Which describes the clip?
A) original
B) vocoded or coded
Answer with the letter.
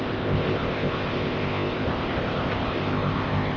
B